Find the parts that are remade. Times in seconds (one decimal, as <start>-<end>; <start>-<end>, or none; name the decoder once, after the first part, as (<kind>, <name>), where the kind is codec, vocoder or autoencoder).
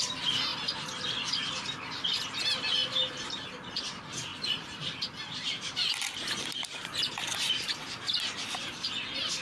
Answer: 0.0-0.5 (vocoder, BigVGAN v2); 1.5-2.8; 3.7-9.4